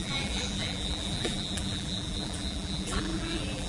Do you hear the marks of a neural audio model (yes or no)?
yes